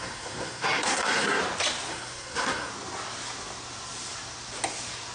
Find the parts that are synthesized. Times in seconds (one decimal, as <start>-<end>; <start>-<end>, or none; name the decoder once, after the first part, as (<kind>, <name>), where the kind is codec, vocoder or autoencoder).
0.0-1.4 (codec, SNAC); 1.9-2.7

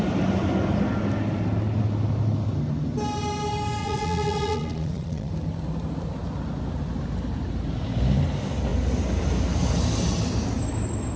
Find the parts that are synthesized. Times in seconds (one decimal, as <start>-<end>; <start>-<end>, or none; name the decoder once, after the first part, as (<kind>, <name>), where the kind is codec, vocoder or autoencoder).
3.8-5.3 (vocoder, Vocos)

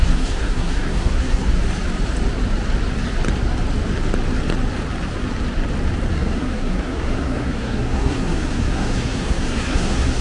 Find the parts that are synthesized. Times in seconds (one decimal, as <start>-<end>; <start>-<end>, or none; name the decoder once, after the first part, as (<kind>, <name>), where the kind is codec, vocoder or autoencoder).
0.0-1.4 (codec, SNAC); 6.1-10.2

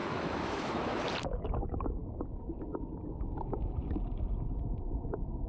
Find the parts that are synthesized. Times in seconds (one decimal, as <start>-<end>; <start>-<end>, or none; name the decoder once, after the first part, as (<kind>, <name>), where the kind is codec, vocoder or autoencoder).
0.0-1.0 (autoencoder, DAC-VAE)

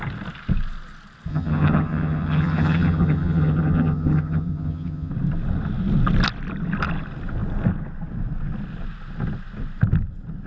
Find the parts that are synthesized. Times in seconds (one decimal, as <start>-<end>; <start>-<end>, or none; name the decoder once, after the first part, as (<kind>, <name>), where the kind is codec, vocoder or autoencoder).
1.3-5.1 (vocoder, HiFi-GAN)

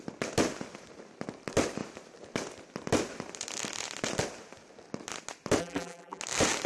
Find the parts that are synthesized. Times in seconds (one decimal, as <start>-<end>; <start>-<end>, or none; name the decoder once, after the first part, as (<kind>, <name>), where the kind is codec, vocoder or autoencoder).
5.6-6.2 (vocoder, BigVGAN v2)

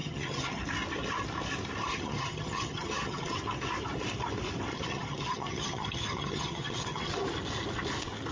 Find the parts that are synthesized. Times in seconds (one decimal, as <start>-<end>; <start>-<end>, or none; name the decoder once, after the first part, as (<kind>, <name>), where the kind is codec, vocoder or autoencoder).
0.0-0.6 (vocoder, HiFi-GAN); 1.9-3.4; 4.7-7.1

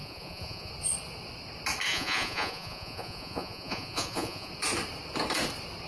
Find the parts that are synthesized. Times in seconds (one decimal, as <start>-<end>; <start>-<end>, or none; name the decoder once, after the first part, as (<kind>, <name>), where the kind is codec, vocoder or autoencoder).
0.0-0.7 (vocoder, Vocos); 1.9-4.5